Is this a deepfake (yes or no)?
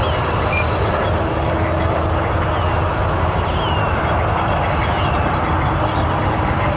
no